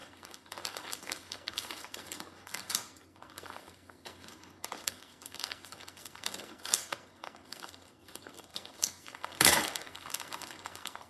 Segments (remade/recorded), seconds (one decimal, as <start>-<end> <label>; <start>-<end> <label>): 0.0-11.1 remade